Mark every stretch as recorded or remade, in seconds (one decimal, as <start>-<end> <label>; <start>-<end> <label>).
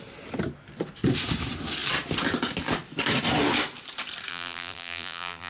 0.0-4.3 recorded; 4.3-5.5 remade